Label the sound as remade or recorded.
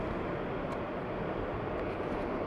recorded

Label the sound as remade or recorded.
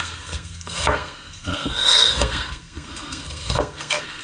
remade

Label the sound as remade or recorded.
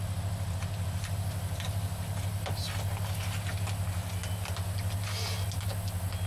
recorded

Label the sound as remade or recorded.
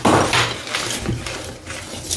recorded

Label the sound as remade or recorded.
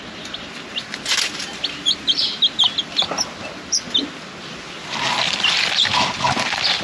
recorded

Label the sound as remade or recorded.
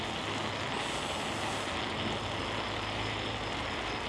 recorded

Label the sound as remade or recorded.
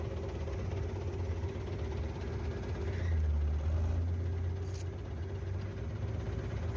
recorded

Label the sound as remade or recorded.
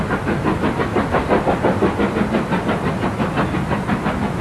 recorded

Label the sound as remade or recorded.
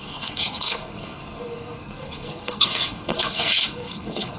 remade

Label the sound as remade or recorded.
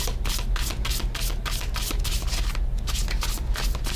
recorded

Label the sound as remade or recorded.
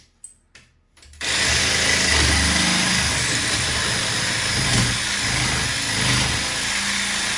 recorded